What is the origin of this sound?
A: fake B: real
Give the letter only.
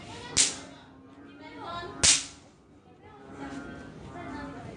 B